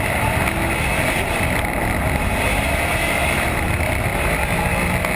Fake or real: real